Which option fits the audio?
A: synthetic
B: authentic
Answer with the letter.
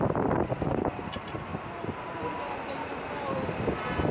B